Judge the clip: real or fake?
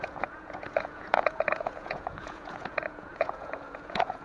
fake